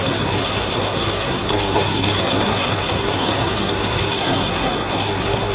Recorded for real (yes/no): no